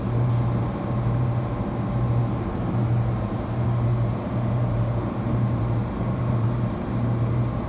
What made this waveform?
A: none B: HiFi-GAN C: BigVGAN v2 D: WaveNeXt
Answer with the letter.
C